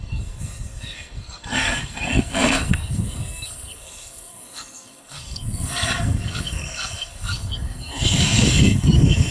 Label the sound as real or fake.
fake